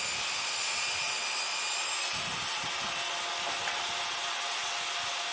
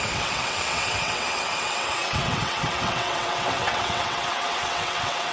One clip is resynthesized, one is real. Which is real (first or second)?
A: first